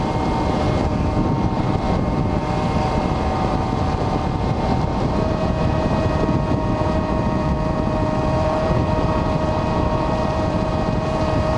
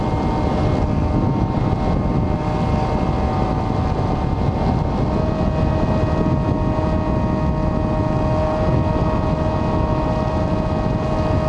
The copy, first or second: first